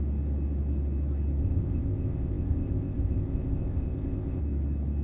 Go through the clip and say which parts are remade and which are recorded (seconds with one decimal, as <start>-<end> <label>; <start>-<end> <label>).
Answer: 0.0-1.4 recorded; 1.4-4.4 remade; 4.4-5.0 recorded